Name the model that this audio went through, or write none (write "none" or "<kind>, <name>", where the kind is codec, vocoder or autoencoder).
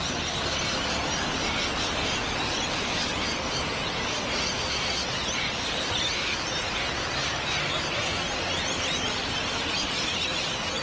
none